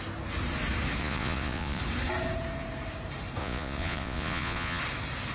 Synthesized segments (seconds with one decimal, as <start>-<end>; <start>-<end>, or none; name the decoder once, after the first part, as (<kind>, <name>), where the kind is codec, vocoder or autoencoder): 1.0-1.8 (vocoder, Vocos); 3.4-4.8